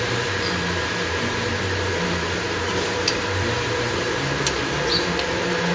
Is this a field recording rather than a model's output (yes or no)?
no